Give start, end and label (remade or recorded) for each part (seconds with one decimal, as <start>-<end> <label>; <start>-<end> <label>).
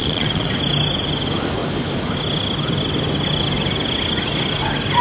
0.0-0.5 remade; 0.5-5.0 recorded